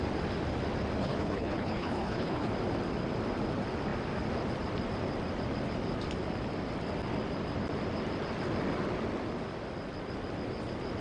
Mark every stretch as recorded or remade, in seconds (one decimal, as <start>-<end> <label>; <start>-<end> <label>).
0.0-1.0 recorded; 1.0-2.5 remade; 2.5-11.0 recorded

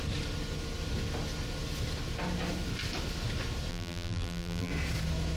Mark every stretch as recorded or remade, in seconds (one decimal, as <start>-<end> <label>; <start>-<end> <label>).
0.0-3.7 recorded; 3.7-4.7 remade; 4.7-5.4 recorded

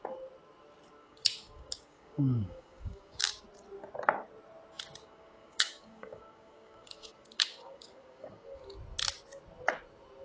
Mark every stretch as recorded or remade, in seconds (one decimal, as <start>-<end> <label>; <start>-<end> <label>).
0.0-1.0 recorded; 1.0-3.4 remade; 3.4-5.0 recorded; 5.0-8.6 remade; 8.6-10.2 recorded

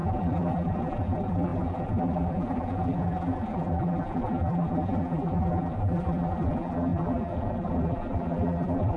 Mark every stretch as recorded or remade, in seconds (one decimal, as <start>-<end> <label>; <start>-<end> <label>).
0.0-9.0 remade

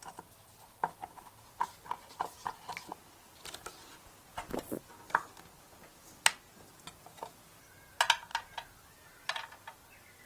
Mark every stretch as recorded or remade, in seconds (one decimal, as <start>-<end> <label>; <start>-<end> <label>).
0.0-10.3 recorded

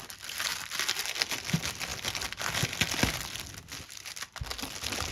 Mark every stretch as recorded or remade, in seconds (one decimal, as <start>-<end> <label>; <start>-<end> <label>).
0.0-5.1 recorded

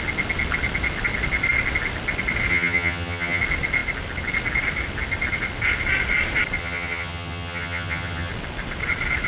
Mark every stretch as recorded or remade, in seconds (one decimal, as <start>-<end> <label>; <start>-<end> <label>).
0.0-2.5 recorded; 2.5-3.4 remade; 3.4-6.6 recorded; 6.6-8.3 remade; 8.3-9.3 recorded

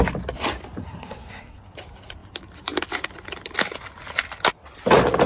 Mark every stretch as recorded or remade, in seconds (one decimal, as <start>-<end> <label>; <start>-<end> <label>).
0.0-0.8 recorded; 0.8-1.6 remade; 1.6-5.3 recorded